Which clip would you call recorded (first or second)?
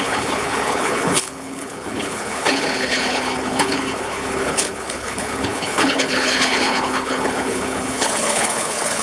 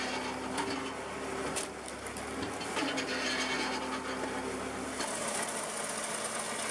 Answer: second